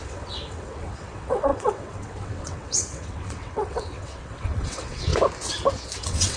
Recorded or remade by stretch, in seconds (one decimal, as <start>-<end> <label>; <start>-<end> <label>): 0.0-5.1 remade; 5.1-6.0 recorded; 6.0-6.4 remade